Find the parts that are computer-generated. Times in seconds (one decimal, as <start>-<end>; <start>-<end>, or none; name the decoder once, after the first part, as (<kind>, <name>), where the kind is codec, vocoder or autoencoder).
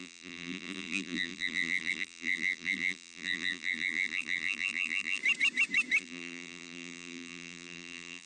0.0-5.2 (vocoder, BigVGAN v2); 6.0-8.3